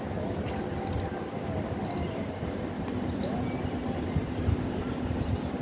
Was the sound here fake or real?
real